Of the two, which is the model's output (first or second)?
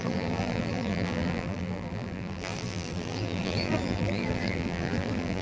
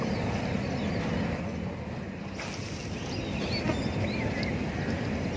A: first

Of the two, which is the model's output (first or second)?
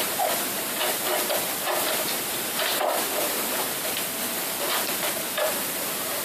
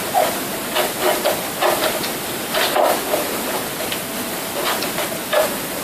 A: first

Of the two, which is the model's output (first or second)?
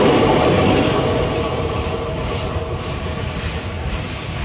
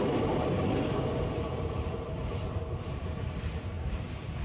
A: second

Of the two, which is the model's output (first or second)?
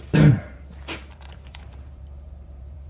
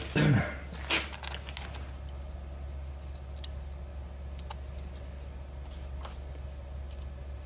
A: first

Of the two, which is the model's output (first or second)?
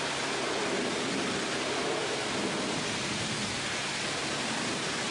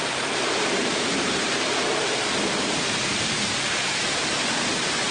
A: second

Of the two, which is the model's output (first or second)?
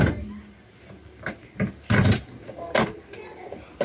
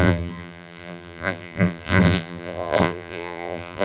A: second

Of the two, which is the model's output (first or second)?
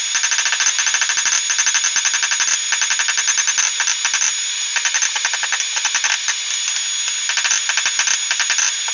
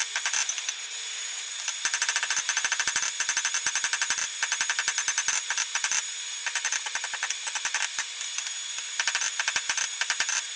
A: second